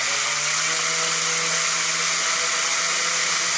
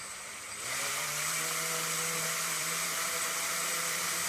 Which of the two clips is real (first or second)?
first